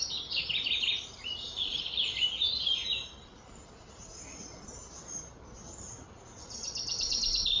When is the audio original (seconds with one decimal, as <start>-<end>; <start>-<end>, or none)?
0.0-7.6